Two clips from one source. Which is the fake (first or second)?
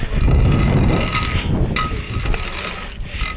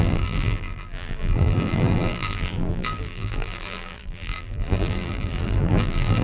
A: second